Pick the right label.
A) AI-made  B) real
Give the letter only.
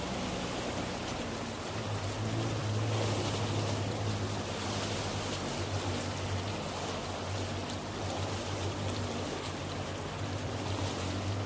B